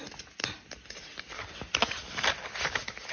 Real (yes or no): yes